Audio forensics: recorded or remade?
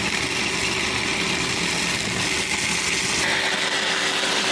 recorded